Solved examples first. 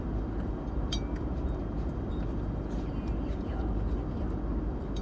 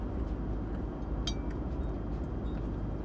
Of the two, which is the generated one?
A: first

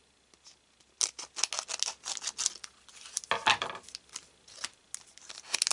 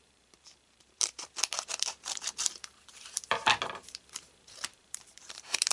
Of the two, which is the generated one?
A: second